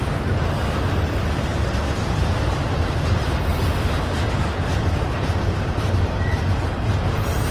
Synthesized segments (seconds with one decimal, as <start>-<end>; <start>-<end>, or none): 4.7-5.9